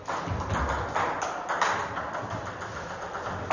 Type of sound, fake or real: real